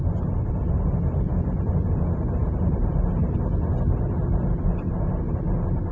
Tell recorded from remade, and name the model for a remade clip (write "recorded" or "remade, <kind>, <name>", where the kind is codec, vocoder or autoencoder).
recorded